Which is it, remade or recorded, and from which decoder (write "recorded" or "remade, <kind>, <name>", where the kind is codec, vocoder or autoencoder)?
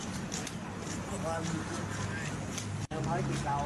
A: recorded